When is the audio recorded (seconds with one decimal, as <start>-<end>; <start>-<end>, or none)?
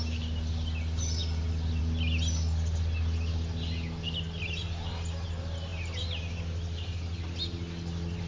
0.0-8.3